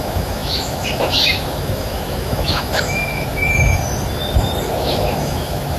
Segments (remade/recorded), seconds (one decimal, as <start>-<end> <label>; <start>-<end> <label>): 0.0-3.4 remade; 3.4-4.7 recorded; 4.7-5.8 remade